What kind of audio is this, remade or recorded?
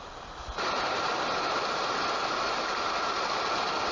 recorded